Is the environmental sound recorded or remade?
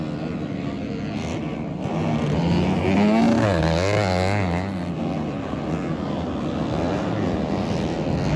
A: recorded